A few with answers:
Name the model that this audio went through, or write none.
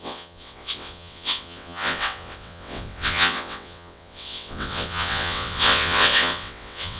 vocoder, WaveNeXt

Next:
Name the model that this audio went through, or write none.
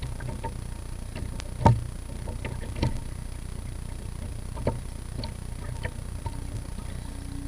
none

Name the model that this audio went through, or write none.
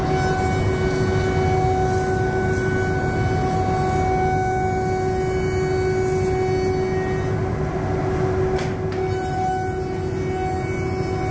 none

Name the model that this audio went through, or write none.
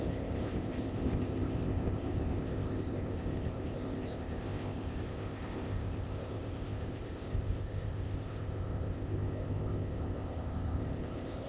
codec, ZipCodec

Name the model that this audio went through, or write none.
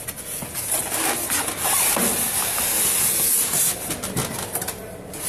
none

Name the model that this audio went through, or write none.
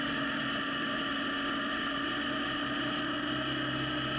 none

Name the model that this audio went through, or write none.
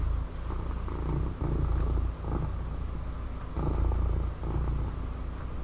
none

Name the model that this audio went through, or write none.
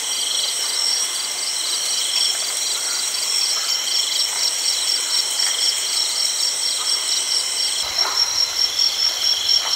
vocoder, BigVGAN v2